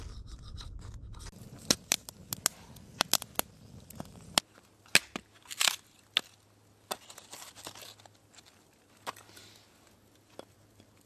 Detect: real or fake real